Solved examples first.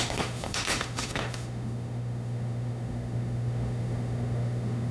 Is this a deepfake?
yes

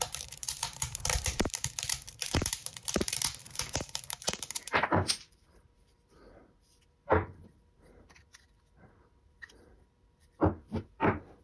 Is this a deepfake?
yes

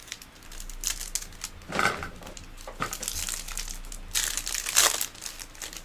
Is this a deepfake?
no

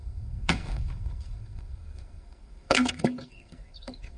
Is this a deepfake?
yes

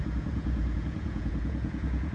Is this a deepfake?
yes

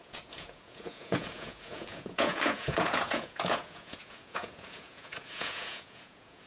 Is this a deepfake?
yes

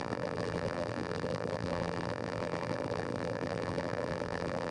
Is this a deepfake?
yes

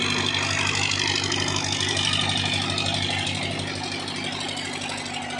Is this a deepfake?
no